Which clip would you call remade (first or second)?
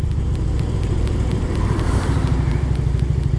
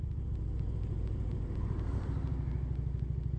first